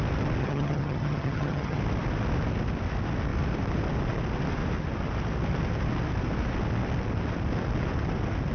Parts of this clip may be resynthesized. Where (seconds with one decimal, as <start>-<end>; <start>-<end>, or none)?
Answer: 0.4-1.8